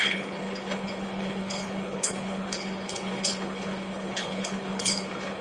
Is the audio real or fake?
fake